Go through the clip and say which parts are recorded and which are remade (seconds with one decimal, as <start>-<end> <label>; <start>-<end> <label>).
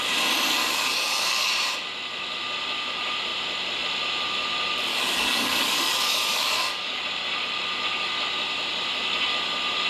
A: 0.0-0.6 recorded; 0.6-1.5 remade; 1.5-4.9 recorded; 4.9-7.0 remade; 7.0-9.9 recorded